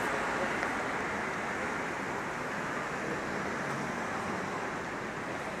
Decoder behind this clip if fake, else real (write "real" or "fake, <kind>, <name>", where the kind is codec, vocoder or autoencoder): real